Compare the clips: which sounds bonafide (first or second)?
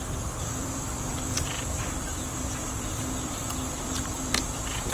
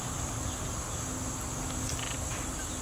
second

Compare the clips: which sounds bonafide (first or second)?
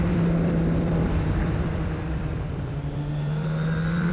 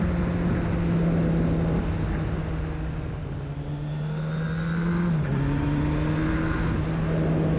second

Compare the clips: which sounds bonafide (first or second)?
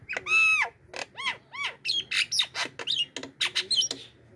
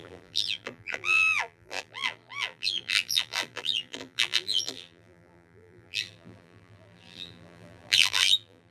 first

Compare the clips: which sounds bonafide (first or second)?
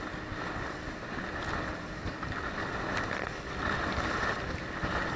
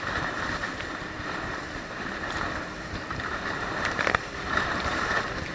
first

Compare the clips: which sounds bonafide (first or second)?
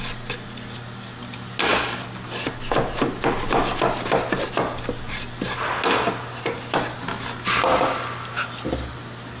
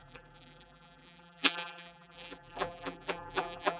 first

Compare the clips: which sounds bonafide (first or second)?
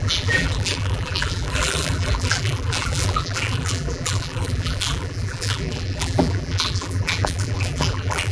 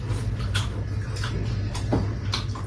second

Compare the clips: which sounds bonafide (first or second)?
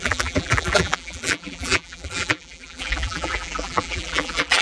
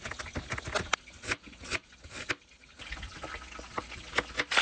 second